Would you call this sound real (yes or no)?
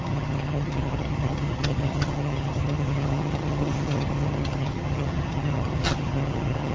no